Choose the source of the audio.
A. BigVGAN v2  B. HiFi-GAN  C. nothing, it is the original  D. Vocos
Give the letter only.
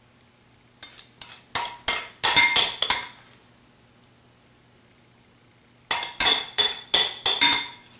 C